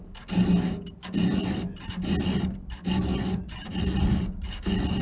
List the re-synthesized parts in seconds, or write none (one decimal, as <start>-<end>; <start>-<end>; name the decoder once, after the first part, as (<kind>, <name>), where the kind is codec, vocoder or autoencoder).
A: 3.1-3.7 (vocoder, Vocos)